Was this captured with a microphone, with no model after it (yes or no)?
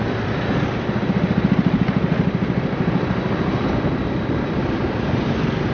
yes